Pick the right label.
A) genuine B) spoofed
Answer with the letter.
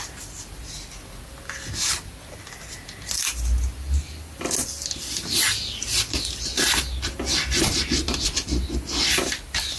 A